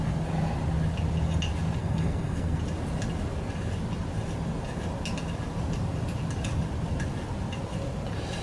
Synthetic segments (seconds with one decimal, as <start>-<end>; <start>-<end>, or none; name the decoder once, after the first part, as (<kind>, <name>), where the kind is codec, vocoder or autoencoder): 1.8-2.6 (codec, SNAC)